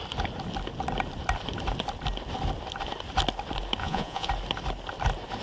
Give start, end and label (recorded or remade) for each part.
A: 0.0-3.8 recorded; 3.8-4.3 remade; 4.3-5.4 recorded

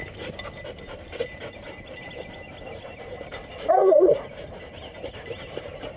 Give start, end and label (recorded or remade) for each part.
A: 0.0-3.8 recorded; 3.8-4.6 remade; 4.6-6.0 recorded

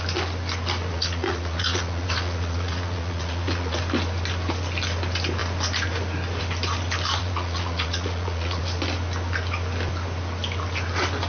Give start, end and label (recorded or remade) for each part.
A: 0.0-0.9 recorded; 0.9-3.8 remade; 3.8-7.2 recorded; 7.2-8.6 remade; 8.6-11.3 recorded

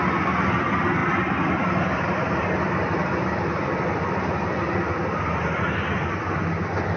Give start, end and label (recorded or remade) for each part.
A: 0.0-7.0 recorded

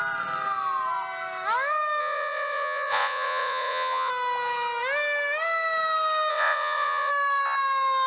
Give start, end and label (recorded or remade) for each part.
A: 0.0-2.0 recorded; 2.0-4.1 remade; 4.1-6.3 recorded; 6.3-7.1 remade; 7.1-8.1 recorded